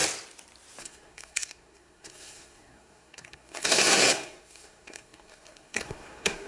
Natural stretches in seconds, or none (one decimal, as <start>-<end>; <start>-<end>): 0.0-0.8